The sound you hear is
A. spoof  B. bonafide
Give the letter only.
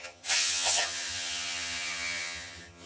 A